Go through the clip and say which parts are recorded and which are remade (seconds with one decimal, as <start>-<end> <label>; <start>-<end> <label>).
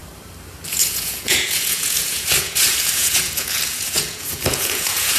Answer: 0.0-0.7 recorded; 0.7-5.2 remade